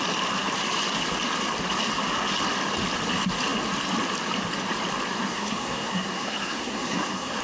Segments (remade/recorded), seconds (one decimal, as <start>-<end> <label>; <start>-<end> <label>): 0.0-5.3 recorded; 5.3-7.4 remade